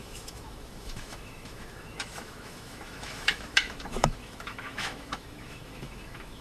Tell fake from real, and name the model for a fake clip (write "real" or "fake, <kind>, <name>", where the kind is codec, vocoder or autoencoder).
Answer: fake, autoencoder, DAC-VAE